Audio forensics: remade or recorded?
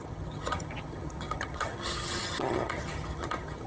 remade